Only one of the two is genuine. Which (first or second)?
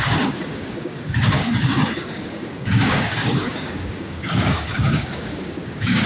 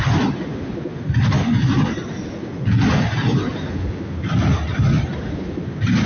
second